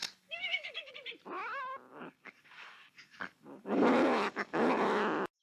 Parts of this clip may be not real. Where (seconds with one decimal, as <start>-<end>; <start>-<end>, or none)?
0.0-0.9; 1.9-5.0